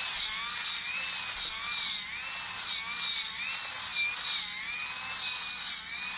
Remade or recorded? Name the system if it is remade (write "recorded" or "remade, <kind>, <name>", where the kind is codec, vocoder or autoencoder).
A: recorded